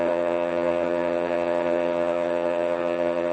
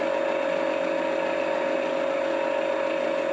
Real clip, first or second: second